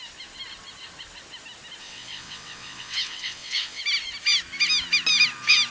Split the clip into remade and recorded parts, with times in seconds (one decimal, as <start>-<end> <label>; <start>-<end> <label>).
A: 0.0-1.8 recorded; 1.8-3.8 remade; 3.8-5.7 recorded